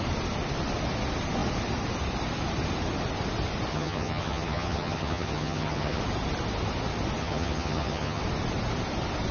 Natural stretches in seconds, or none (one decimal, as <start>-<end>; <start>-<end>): 0.0-3.7; 6.0-7.2; 8.2-9.3